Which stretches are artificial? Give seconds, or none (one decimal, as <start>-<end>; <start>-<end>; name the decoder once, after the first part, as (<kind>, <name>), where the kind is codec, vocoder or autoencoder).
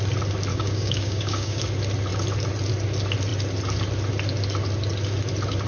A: 0.5-1.6 (codec, DAC)